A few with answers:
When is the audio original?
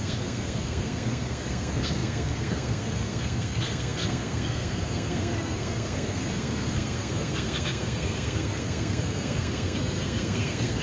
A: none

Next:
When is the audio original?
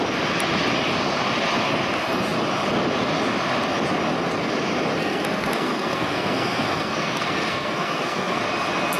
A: 0.0-5.0; 8.4-9.0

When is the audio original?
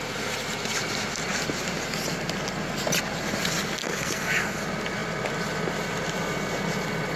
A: 0.0-3.8; 4.6-7.2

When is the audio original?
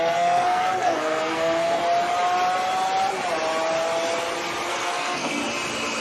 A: 1.8-4.7; 5.4-6.0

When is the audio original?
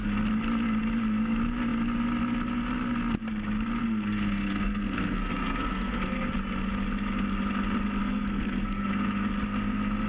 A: 0.0-3.8; 6.3-8.0; 8.9-10.1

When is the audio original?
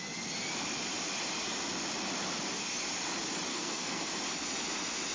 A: 0.0-3.5; 4.1-5.1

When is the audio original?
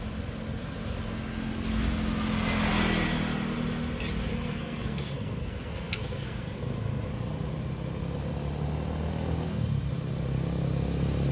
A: 0.0-4.3; 7.1-11.3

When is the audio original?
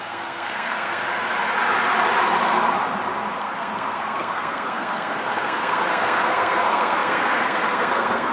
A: 1.0-3.4